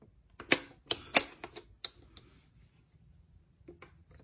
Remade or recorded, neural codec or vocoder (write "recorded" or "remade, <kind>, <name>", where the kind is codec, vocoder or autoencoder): recorded